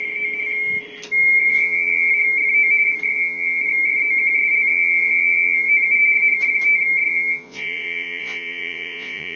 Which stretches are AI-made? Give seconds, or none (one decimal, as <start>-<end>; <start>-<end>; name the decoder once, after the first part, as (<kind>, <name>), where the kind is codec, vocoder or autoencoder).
1.5-2.1 (vocoder, Vocos); 3.1-3.6; 4.7-5.7; 7.1-9.4